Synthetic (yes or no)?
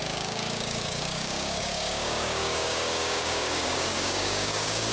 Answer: yes